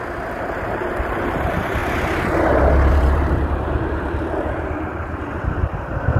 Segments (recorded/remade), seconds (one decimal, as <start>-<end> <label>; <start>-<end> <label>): 0.0-1.8 remade; 1.8-2.9 recorded; 2.9-6.2 remade